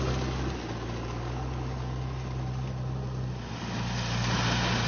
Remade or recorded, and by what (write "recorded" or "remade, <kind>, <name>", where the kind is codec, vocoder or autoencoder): recorded